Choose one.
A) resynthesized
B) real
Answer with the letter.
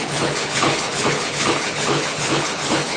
A